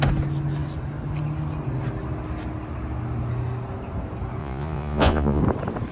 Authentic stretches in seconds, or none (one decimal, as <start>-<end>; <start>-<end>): 0.0-4.4; 5.4-5.9